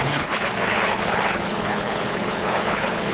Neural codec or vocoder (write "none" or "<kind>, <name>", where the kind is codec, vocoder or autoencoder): codec, HILCodec